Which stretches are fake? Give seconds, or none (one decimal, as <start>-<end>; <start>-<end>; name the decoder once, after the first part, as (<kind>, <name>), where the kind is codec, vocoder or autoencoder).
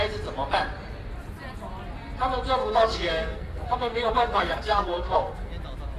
2.6-5.5 (codec, SNAC)